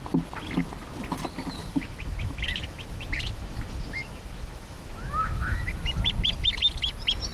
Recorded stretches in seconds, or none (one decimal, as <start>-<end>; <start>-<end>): 0.0-1.6; 6.0-7.3

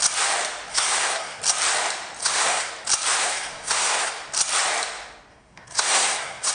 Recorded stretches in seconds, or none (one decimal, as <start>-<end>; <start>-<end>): 0.0-0.7; 1.4-2.2; 2.7-3.2; 4.1-5.3

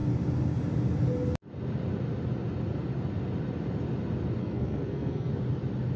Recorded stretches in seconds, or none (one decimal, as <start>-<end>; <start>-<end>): 0.0-4.4; 5.3-6.0